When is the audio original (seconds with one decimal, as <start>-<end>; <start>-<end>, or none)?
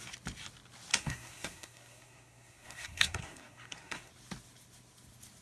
0.0-0.9; 4.1-5.4